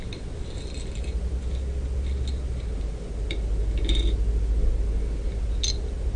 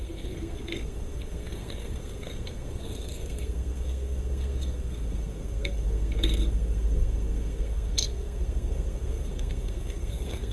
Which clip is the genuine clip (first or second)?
first